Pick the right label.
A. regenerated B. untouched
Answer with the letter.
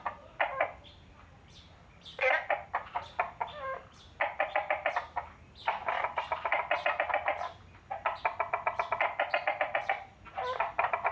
B